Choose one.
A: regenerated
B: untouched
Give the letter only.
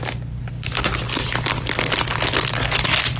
B